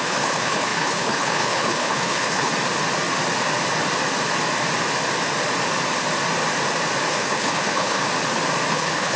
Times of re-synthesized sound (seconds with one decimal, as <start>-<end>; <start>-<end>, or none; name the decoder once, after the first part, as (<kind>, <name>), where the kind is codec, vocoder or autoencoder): 0.0-2.5 (codec, HILCodec); 7.1-8.0; 8.7-9.2